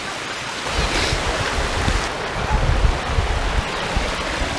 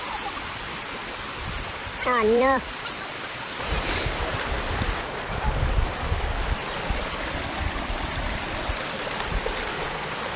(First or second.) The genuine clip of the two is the first